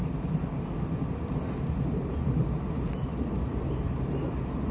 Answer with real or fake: real